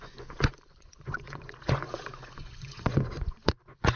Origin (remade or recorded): remade